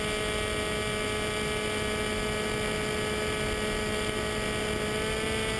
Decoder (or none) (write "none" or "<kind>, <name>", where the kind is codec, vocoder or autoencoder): none